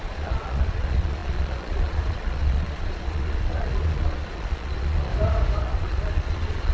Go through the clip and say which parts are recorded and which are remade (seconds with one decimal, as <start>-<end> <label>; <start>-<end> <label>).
0.0-5.1 remade; 5.1-5.6 recorded; 5.6-6.7 remade